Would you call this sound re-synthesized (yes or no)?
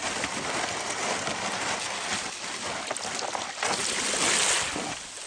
no